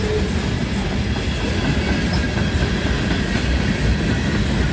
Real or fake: real